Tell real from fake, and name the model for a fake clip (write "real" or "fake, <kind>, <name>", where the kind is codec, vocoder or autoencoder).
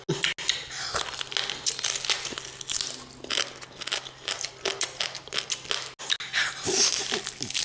real